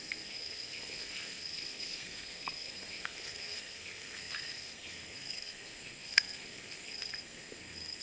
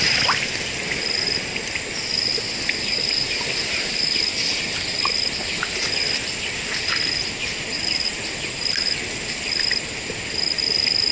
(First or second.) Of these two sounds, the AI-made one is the first